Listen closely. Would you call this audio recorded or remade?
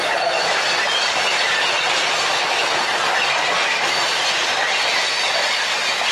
recorded